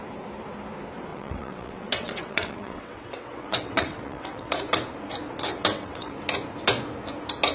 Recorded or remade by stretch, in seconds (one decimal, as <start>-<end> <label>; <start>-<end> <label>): 0.0-1.1 recorded; 1.1-4.5 remade; 4.5-5.5 recorded; 5.5-6.1 remade; 6.1-7.5 recorded